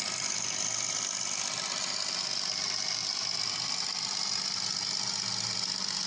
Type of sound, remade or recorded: recorded